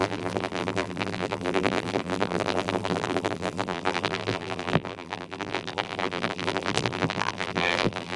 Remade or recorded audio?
remade